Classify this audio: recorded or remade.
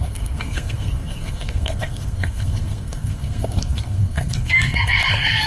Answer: remade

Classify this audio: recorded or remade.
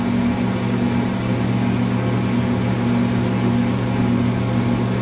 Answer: recorded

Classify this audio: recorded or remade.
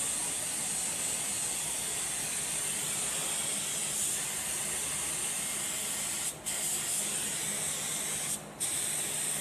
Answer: recorded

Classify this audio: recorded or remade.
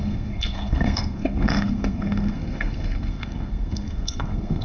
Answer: remade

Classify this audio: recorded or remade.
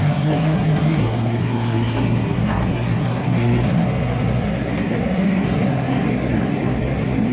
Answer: remade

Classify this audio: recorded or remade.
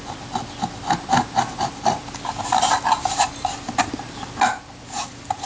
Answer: recorded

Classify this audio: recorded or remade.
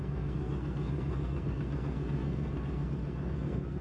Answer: remade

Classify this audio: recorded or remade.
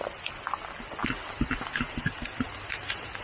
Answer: recorded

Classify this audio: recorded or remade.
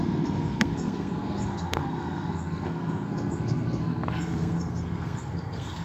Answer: remade